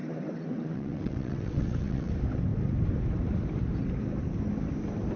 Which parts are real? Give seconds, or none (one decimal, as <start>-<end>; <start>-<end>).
2.1-5.2